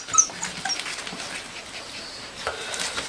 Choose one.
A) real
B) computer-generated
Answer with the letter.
A